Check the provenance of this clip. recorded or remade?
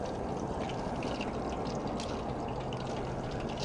recorded